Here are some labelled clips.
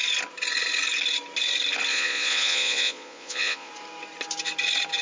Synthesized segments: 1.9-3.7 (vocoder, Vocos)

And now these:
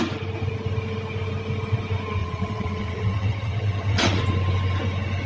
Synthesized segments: 2.2-4.2 (vocoder, WaveNeXt)

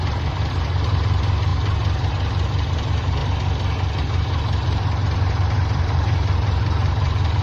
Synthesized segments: 0.0-3.2 (vocoder, BigVGAN v2); 4.0-7.4

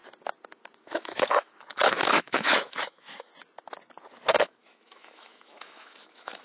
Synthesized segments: 0.8-3.3 (autoencoder, DAC-VAE); 4.4-6.4

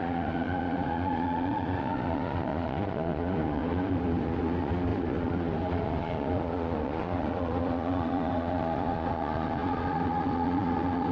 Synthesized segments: 0.0-11.1 (vocoder, Vocos)

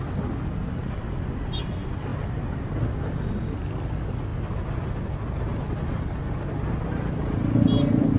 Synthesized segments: none

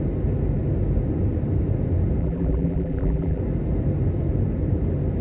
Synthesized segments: 2.2-3.4 (vocoder, BigVGAN v2)

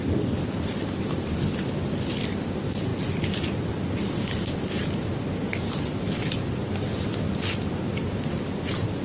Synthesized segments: 0.0-2.9 (vocoder, BigVGAN v2); 4.1-9.0